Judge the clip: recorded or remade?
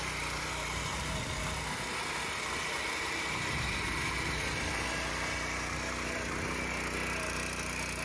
recorded